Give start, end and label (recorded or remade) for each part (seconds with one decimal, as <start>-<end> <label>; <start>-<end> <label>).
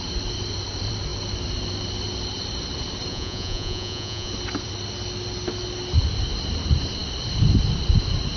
0.0-3.1 recorded; 3.1-4.3 remade; 4.3-8.4 recorded